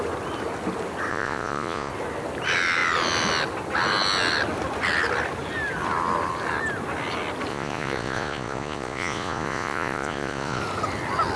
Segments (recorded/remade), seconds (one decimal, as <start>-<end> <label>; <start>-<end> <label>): 0.0-1.1 recorded; 1.1-1.9 remade; 1.9-7.5 recorded; 7.5-10.6 remade; 10.6-11.4 recorded